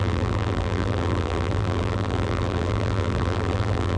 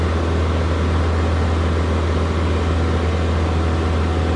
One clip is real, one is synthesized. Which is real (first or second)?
second